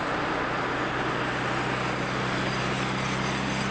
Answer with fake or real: real